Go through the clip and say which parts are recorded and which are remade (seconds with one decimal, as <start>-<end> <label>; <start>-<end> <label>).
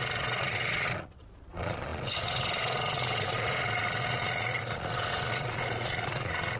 0.0-6.6 remade